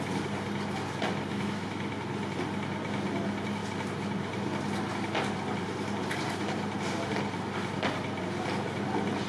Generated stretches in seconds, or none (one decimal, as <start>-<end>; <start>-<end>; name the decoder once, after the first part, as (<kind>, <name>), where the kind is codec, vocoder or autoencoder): 1.3-1.9 (autoencoder, DAC-VAE)